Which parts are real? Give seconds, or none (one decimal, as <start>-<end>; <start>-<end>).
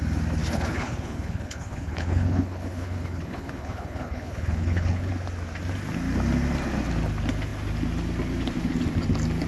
0.0-0.4; 5.1-9.5